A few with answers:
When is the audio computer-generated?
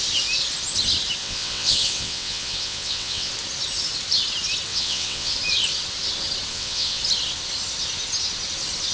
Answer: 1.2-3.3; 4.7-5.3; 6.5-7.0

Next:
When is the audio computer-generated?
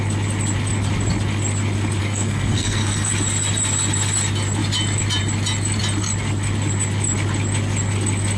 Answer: 2.0-3.1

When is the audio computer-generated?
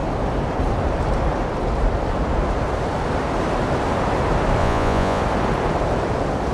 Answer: 4.6-5.2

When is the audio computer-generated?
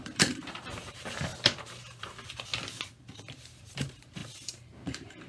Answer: 0.0-2.5; 3.0-5.3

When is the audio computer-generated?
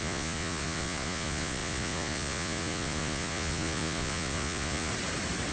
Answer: 0.0-4.9